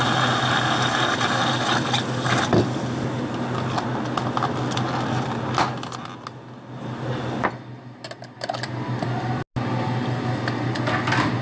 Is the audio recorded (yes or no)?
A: yes